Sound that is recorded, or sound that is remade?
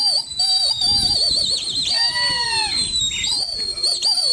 recorded